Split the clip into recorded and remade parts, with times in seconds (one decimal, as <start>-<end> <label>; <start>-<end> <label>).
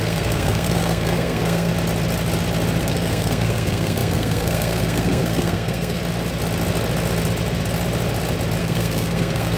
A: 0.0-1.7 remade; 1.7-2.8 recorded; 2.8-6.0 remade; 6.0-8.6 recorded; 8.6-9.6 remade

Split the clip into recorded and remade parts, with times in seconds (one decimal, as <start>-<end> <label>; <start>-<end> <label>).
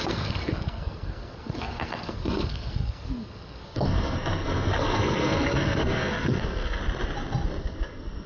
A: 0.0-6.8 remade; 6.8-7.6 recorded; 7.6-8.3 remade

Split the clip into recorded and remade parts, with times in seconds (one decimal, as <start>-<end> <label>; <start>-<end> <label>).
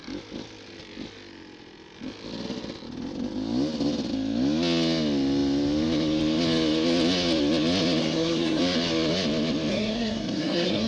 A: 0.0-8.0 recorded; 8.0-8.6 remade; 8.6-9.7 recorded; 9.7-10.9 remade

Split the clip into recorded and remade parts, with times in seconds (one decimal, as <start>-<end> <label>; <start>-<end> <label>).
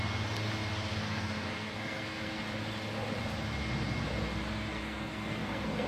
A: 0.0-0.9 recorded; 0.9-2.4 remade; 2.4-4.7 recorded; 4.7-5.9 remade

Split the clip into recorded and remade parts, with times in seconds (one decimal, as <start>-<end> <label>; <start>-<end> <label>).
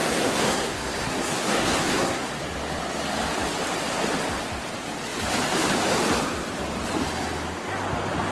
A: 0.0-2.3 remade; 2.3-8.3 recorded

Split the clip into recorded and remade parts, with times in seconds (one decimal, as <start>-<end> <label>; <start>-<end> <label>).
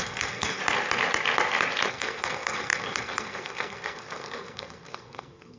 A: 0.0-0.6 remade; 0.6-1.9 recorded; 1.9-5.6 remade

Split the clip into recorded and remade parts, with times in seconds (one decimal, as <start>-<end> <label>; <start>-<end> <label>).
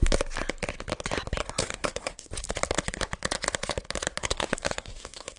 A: 0.0-1.6 recorded; 1.6-2.3 remade; 2.3-4.2 recorded; 4.2-5.4 remade